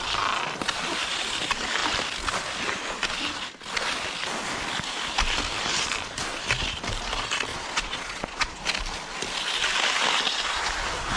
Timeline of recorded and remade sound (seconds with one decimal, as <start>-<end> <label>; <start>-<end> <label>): 0.0-7.5 recorded; 7.5-8.6 remade; 8.6-11.2 recorded